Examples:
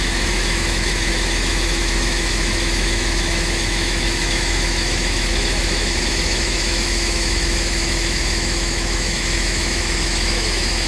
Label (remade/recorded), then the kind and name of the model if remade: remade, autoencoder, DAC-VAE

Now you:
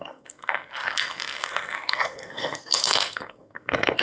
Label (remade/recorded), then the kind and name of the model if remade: remade, codec, SNAC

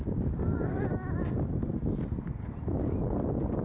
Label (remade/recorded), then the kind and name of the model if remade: recorded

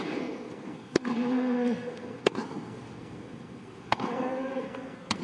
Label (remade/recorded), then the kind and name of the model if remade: remade, codec, SNAC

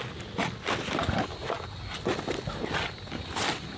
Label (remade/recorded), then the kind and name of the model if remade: recorded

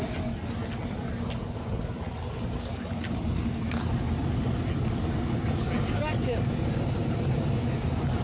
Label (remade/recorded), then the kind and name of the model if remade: recorded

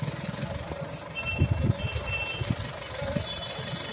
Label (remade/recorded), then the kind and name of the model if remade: recorded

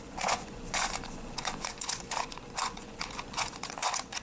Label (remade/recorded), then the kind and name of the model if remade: remade, vocoder, Vocos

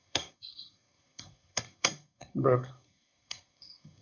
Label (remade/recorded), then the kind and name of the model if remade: remade, codec, SNAC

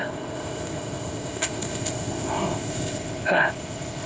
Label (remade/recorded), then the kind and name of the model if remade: remade, codec, ZipCodec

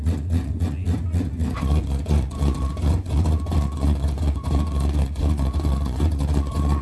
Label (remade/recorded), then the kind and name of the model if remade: remade, vocoder, Vocos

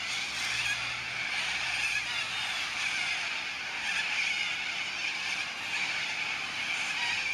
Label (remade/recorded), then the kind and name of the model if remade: recorded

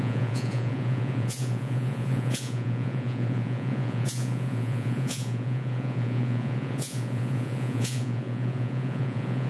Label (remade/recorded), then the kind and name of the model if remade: remade, vocoder, Vocos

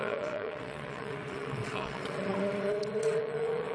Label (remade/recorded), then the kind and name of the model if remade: remade, vocoder, WaveNeXt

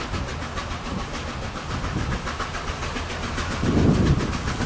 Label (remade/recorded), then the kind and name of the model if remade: recorded